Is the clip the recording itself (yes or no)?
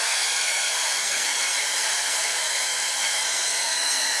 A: no